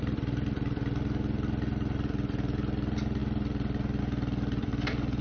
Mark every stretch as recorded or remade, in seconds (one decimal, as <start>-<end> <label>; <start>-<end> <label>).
0.0-5.2 recorded